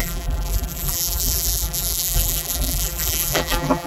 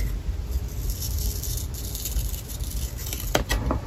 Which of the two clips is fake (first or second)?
first